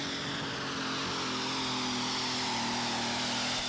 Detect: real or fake real